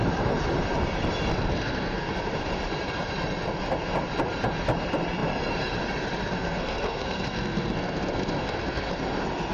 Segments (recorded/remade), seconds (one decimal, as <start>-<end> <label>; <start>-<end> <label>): 0.0-1.3 recorded; 1.3-2.1 remade; 2.1-6.3 recorded; 6.3-9.0 remade; 9.0-9.5 recorded